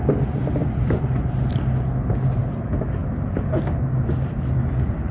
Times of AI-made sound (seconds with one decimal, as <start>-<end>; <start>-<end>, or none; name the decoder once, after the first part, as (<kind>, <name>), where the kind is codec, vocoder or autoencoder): 0.6-1.3 (vocoder, BigVGAN v2)